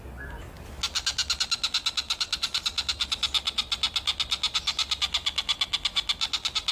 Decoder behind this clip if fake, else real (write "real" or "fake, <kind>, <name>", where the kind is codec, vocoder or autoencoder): real